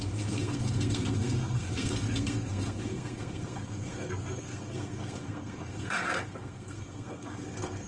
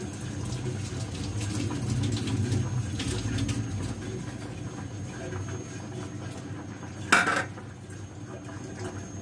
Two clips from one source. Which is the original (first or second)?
second